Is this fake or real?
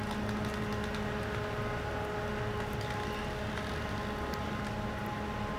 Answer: real